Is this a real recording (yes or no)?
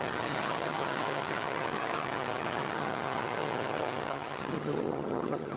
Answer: no